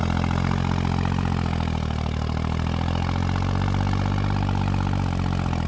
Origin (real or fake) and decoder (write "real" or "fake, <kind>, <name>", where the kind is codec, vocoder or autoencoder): real